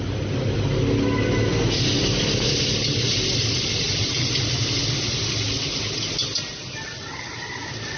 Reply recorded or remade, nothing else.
recorded